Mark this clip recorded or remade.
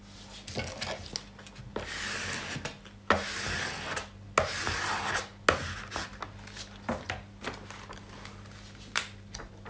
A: recorded